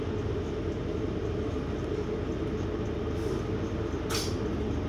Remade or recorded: recorded